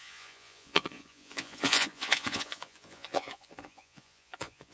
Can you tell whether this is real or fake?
fake